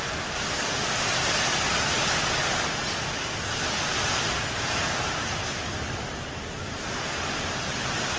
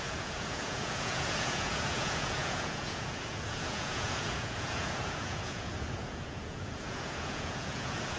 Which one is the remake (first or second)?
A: second